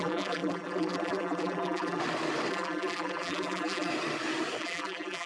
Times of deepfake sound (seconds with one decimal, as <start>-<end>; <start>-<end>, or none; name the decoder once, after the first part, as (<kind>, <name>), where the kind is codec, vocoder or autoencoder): 0.0-2.0 (vocoder, BigVGAN v2); 2.5-3.9; 4.6-5.3